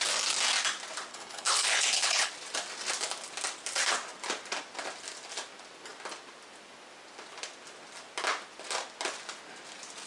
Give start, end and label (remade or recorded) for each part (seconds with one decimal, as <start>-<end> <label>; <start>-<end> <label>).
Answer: 0.0-1.1 recorded; 1.1-2.3 remade; 2.3-10.1 recorded